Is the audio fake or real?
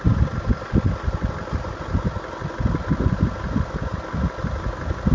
real